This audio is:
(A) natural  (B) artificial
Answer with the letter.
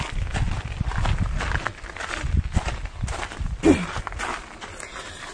A